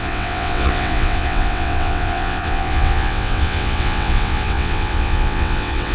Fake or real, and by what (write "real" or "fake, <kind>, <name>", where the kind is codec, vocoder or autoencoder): fake, vocoder, WaveNeXt